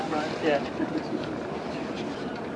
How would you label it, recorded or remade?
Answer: recorded